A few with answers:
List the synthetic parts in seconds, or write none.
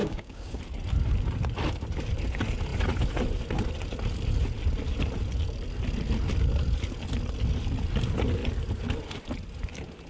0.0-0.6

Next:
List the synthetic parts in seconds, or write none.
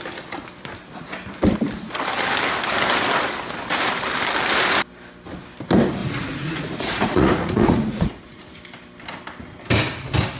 6.0-8.6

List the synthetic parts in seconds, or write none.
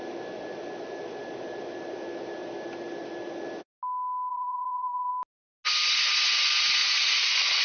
4.3-5.1; 6.8-7.6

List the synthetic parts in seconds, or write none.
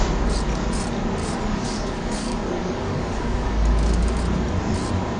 1.2-4.2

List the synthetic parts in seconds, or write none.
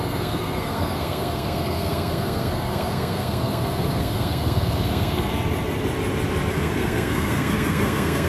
0.0-5.3; 6.5-8.3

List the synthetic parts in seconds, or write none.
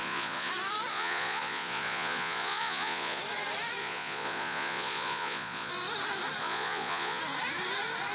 0.0-0.5; 0.9-3.2; 3.8-5.7; 6.4-7.2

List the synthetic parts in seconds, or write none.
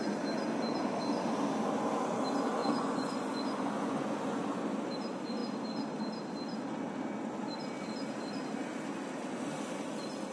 2.6-4.4